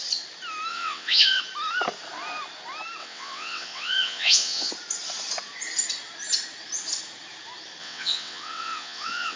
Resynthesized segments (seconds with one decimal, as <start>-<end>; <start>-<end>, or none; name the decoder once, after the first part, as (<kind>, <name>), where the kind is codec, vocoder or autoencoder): 0.7-1.4 (vocoder, WaveNeXt); 3.0-4.7; 7.8-9.4